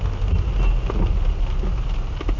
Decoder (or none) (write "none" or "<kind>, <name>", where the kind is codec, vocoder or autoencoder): none